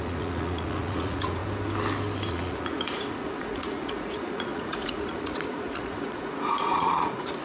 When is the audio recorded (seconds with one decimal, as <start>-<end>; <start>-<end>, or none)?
1.4-2.3